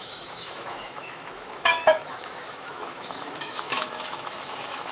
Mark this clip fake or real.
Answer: fake